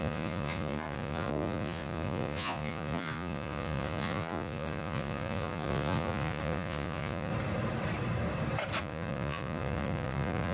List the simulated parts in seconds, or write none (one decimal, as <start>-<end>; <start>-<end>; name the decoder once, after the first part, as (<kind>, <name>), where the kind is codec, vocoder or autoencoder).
0.0-7.3 (vocoder, Vocos); 8.8-10.5